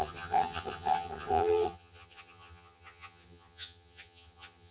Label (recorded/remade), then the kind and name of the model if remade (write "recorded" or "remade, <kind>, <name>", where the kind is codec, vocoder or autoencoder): remade, vocoder, HiFi-GAN